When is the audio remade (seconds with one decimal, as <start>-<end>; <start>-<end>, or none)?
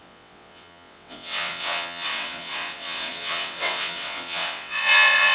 0.0-5.3